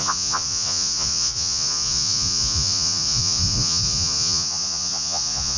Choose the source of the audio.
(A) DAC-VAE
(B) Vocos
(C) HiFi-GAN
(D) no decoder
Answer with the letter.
B